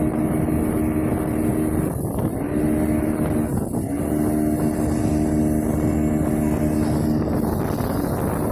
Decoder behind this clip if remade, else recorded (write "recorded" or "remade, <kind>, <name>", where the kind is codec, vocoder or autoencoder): recorded